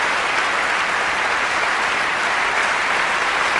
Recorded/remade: recorded